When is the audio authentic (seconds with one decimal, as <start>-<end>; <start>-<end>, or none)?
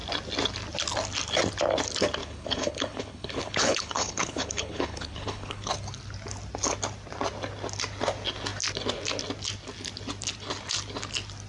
0.0-2.2; 5.7-11.5